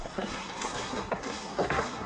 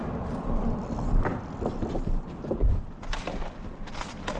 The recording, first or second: second